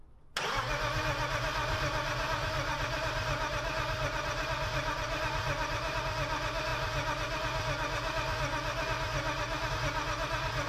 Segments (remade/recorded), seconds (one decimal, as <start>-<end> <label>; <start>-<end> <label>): 0.0-1.6 recorded; 1.6-6.0 remade; 6.0-10.7 recorded